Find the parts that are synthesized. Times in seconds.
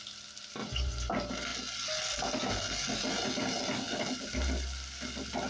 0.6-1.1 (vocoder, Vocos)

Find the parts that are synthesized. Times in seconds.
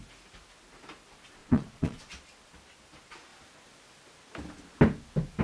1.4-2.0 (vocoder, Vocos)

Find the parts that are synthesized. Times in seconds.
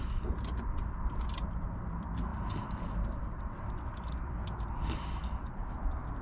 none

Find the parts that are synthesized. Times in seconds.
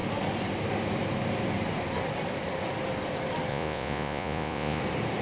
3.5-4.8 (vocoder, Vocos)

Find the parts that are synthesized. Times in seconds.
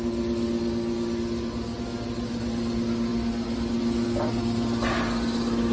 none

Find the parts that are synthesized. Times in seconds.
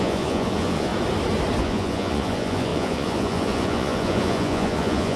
0.0-0.9 (vocoder, Vocos); 1.6-5.2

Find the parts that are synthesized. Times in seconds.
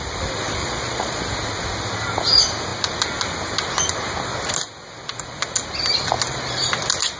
0.6-1.2 (vocoder, Vocos)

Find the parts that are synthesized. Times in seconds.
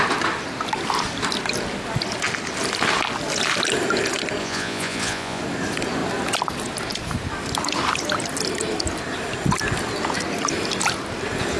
4.4-5.4 (vocoder, Vocos)